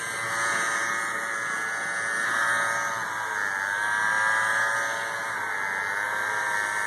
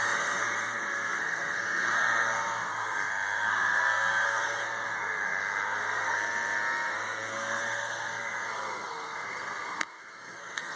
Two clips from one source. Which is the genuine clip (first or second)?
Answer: first